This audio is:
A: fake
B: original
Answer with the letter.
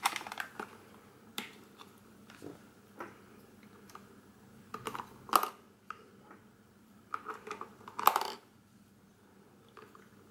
B